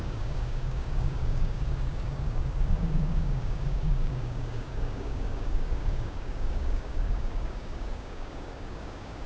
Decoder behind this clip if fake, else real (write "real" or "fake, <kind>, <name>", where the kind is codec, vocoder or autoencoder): fake, codec, DAC